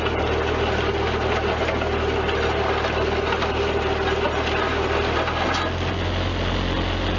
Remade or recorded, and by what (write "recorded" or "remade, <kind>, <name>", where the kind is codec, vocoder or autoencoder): recorded